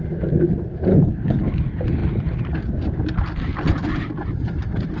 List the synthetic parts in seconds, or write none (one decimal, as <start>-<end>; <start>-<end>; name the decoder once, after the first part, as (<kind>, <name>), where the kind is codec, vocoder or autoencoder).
0.9-1.5 (codec, HILCodec)